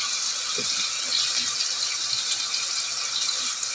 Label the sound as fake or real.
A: real